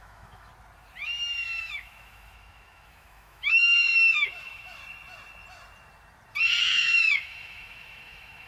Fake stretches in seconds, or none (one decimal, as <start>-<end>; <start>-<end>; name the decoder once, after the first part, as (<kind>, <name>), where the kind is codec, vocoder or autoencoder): 0.0-0.5 (autoencoder, DAC-VAE); 1.6-4.8; 6.6-8.5